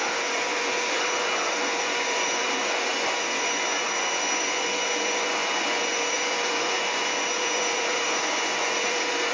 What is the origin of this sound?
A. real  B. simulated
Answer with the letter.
B